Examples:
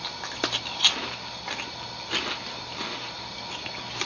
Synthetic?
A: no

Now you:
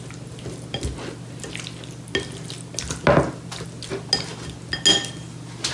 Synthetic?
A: no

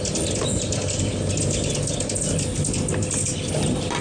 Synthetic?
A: no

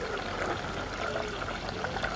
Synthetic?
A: no